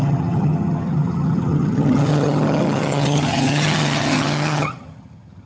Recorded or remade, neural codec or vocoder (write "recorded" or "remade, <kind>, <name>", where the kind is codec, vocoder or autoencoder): remade, vocoder, HiFi-GAN